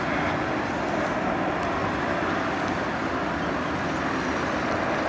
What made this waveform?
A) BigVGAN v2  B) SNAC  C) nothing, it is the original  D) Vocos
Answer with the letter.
C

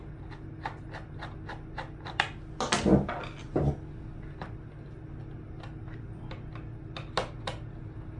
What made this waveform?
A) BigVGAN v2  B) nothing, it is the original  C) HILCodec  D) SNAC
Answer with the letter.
B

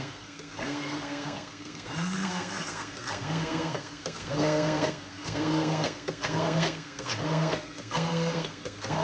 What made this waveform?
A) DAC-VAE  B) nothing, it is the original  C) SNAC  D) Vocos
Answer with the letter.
C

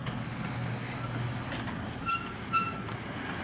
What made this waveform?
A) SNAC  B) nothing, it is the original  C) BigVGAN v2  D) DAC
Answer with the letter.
B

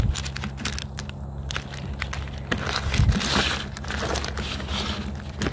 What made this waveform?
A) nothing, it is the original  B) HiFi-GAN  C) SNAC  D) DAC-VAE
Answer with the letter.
A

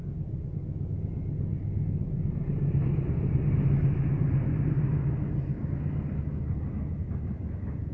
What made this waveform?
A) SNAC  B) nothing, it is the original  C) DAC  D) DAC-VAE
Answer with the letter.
B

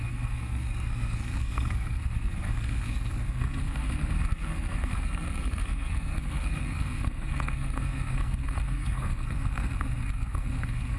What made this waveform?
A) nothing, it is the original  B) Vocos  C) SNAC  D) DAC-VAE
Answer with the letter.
C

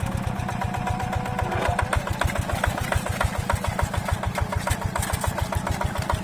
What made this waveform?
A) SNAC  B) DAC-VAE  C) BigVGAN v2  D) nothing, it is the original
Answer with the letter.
D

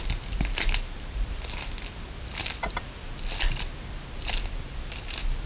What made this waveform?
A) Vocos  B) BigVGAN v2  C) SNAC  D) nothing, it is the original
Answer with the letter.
D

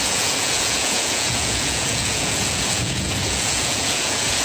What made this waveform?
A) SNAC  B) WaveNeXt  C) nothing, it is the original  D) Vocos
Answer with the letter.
D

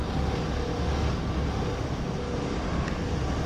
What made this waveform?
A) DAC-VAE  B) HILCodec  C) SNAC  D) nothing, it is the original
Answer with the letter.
D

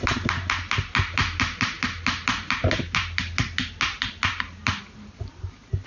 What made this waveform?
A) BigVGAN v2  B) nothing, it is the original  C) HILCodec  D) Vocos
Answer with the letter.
B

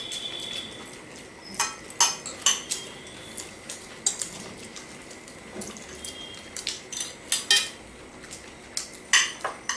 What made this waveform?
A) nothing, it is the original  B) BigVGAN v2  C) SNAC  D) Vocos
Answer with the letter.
A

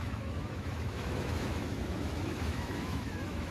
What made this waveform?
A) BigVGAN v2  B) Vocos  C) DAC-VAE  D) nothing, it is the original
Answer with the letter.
C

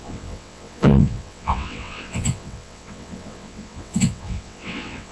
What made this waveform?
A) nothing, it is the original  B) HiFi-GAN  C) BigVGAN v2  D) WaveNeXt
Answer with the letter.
D